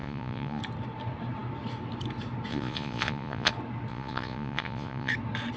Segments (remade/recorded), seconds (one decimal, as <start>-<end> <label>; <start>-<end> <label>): 0.0-0.6 remade; 0.6-2.5 recorded; 2.5-3.5 remade; 3.5-3.9 recorded; 3.9-5.1 remade; 5.1-5.6 recorded